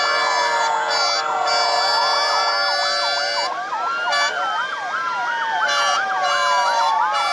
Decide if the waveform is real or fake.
real